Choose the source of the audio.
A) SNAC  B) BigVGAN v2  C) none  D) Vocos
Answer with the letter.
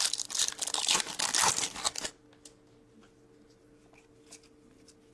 C